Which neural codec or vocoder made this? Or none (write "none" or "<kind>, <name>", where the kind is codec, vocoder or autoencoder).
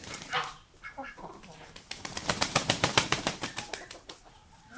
vocoder, BigVGAN v2